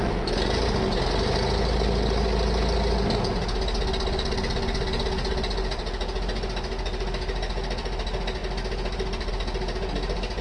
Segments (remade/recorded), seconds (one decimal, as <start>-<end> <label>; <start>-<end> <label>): 0.0-10.4 recorded